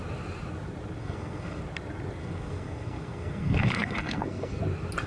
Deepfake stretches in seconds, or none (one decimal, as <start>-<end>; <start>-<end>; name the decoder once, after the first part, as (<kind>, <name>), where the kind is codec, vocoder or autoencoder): 1.0-1.6 (codec, SNAC); 2.2-4.6